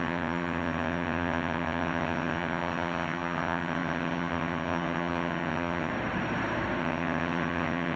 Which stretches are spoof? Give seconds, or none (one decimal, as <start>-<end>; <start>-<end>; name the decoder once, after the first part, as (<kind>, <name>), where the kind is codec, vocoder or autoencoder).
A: 0.0-5.9 (vocoder, HiFi-GAN); 6.8-8.0